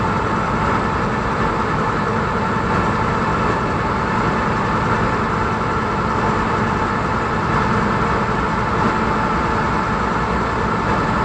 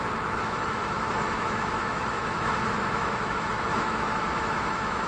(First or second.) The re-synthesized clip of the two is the second